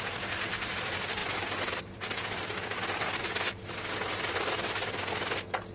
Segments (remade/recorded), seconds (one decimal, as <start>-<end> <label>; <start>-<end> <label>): 0.0-5.7 recorded

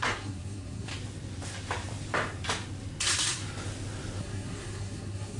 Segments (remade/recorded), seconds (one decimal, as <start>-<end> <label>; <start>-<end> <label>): 0.0-0.9 remade; 0.9-3.0 recorded; 3.0-3.4 remade; 3.4-4.2 recorded; 4.2-5.4 remade

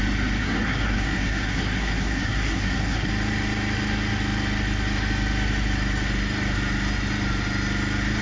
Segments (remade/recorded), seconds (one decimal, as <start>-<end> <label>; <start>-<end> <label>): 0.0-0.4 recorded; 0.4-3.1 remade; 3.1-8.2 recorded

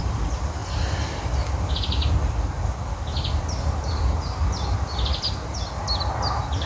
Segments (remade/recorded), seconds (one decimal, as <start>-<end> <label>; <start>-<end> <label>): 0.0-6.7 recorded

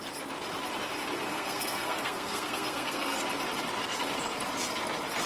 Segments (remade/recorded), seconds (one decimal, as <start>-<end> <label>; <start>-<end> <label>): 0.0-1.3 recorded; 1.3-3.2 remade; 3.2-5.3 recorded

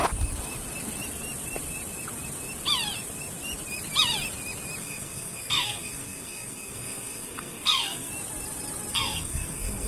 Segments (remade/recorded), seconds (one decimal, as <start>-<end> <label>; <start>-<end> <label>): 0.0-4.8 recorded; 4.8-8.1 remade; 8.1-8.9 recorded; 8.9-9.9 remade

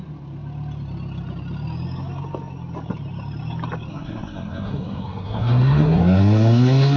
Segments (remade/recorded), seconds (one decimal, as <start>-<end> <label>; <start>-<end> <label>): 0.0-3.9 recorded; 3.9-7.0 remade

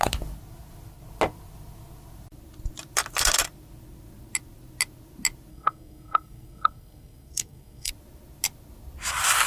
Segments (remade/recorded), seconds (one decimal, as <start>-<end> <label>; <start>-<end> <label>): 0.0-5.5 recorded; 5.5-7.9 remade; 7.9-9.5 recorded